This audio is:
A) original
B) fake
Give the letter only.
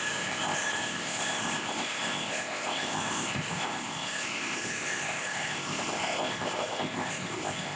B